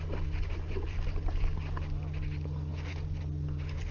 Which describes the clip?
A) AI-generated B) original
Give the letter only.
B